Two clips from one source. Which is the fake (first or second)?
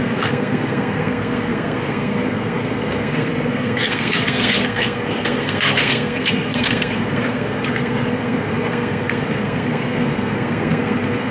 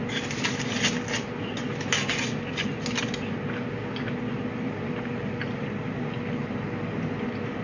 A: first